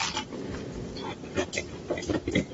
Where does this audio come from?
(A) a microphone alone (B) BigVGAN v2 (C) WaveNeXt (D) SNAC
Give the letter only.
A